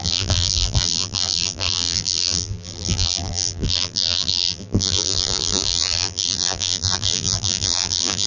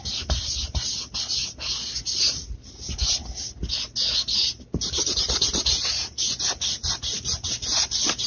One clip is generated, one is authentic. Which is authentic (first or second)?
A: second